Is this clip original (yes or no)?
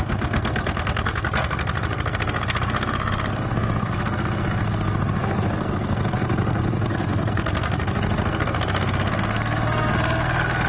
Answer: no